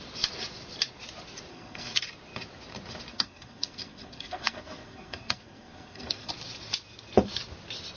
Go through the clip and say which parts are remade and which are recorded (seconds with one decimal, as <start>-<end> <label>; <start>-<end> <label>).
0.0-1.5 recorded; 1.5-2.0 remade; 2.0-3.1 recorded; 3.1-6.3 remade; 6.3-8.0 recorded